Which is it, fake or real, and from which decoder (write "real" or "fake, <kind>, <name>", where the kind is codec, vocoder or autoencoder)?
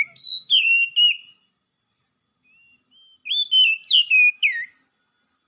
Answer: real